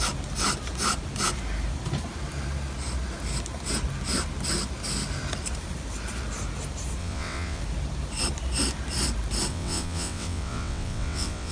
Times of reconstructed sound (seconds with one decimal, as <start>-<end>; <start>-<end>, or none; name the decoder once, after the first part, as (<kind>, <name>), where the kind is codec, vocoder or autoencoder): 7.0-7.6 (vocoder, WaveNeXt); 9.5-11.5